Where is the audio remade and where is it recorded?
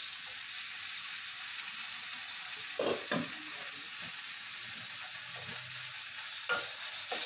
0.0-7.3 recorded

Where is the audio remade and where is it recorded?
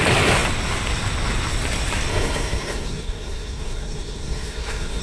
0.0-2.1 recorded; 2.1-5.0 remade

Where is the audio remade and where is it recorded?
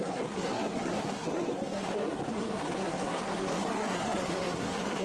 0.0-5.0 remade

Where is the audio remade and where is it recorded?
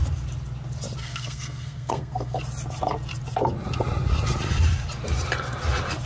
0.0-1.0 recorded; 1.0-2.4 remade; 2.4-6.1 recorded